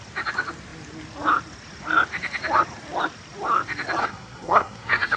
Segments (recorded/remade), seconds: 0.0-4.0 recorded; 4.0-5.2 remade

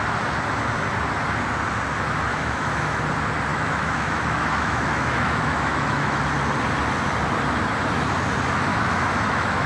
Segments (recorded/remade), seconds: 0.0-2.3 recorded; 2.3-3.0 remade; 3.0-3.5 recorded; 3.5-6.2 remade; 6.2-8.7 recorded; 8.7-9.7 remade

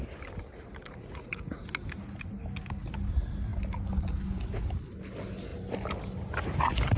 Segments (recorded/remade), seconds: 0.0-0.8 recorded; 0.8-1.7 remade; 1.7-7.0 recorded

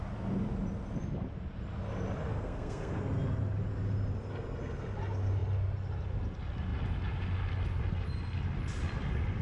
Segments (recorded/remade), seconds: 0.0-2.3 recorded; 2.3-3.0 remade; 3.0-9.4 recorded

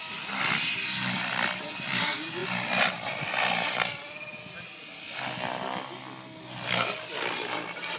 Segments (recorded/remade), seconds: 0.0-8.0 recorded